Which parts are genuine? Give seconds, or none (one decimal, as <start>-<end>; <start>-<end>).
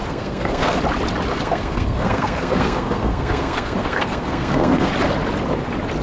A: 0.8-1.3; 4.9-6.0